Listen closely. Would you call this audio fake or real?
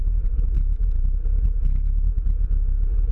real